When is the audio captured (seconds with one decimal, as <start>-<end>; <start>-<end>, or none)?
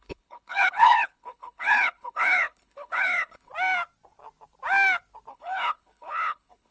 3.5-5.3